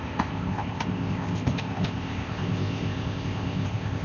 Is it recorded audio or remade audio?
remade